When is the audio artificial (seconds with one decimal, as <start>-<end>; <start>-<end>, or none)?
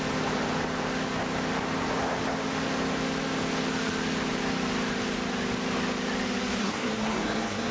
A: 6.6-7.7